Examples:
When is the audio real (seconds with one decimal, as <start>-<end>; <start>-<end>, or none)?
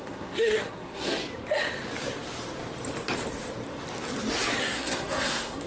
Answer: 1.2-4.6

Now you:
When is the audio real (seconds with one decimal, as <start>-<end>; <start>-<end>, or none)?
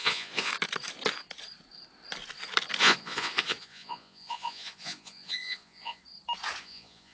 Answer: 0.5-2.8; 6.0-6.6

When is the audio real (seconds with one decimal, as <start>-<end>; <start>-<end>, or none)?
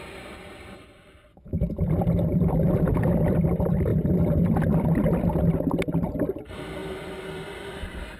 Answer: 0.0-1.3; 1.8-8.2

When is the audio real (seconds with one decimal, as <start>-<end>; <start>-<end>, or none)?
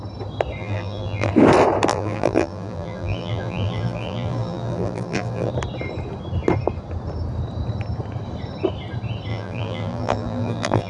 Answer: 0.0-0.6; 1.3-1.9; 5.5-9.3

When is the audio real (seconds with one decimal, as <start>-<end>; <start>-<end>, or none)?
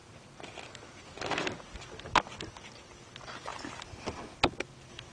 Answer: 0.0-5.1